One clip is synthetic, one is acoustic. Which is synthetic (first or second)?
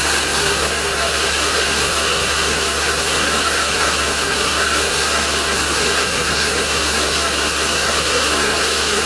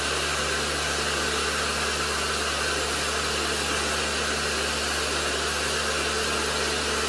first